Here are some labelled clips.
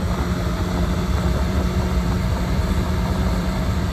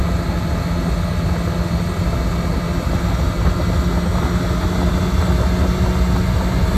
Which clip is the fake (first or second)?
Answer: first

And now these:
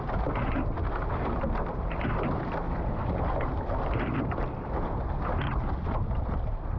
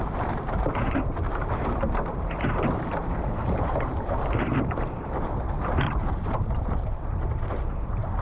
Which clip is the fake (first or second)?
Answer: second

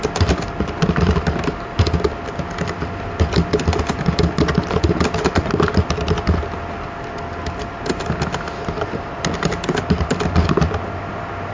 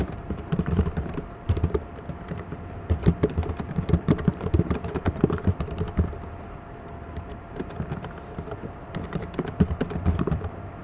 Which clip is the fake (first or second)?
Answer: second